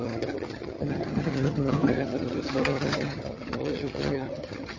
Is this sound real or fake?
fake